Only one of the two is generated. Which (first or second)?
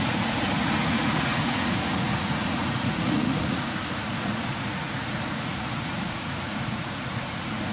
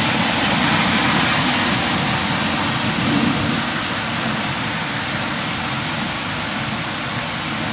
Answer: first